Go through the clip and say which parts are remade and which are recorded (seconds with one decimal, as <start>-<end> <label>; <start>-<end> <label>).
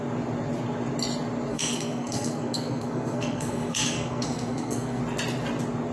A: 0.0-1.5 recorded; 1.5-5.0 remade; 5.0-5.9 recorded